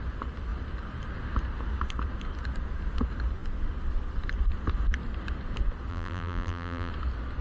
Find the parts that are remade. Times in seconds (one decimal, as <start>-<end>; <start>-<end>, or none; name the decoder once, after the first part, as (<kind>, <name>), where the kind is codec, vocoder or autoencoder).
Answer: 5.9-6.9 (vocoder, BigVGAN v2)